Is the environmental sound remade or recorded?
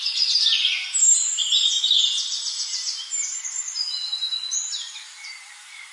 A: remade